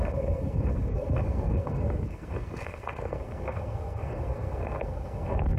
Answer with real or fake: fake